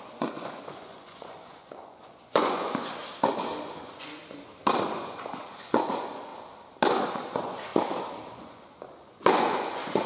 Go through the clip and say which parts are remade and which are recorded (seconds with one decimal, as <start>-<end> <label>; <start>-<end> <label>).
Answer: 0.0-3.0 remade; 3.0-3.6 recorded; 3.6-4.2 remade; 4.2-5.0 recorded; 5.0-6.3 remade; 6.3-7.1 recorded; 7.1-7.7 remade; 7.7-8.3 recorded; 8.3-10.1 remade